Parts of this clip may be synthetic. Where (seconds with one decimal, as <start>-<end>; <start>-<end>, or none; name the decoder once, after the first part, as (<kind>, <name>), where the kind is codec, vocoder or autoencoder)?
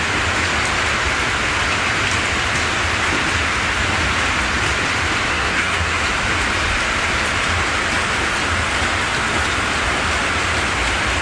5.3-6.0 (codec, SNAC)